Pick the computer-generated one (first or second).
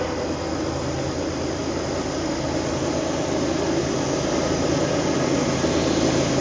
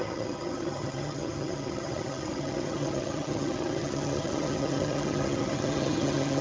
second